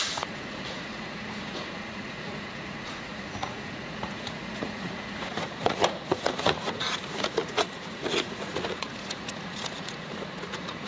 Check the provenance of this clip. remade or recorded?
remade